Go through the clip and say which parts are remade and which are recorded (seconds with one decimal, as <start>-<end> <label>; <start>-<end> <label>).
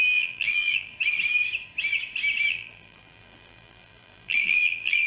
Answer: 0.0-0.9 remade; 0.9-2.5 recorded; 2.5-5.1 remade